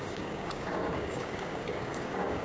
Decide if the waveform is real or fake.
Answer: fake